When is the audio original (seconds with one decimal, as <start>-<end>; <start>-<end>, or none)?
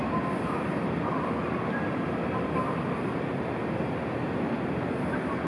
3.3-5.5